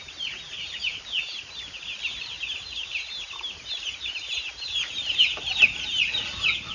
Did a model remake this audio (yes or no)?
no